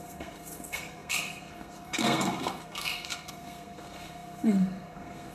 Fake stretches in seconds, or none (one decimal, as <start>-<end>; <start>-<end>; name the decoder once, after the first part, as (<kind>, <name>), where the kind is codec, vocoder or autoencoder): 0.0-5.3 (codec, SNAC)